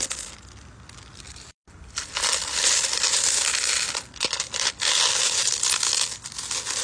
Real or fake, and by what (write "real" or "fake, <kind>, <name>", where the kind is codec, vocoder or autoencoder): real